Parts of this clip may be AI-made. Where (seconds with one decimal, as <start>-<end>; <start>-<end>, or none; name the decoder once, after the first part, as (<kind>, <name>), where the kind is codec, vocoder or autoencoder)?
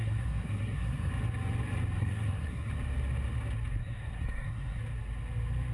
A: 0.0-1.1 (codec, SNAC); 2.0-2.7; 3.8-4.8